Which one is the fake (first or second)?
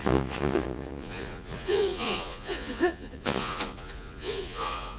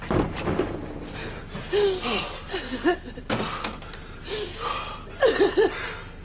first